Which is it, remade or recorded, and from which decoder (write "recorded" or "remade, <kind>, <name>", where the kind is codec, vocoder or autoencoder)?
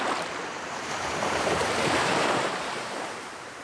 remade, vocoder, BigVGAN v2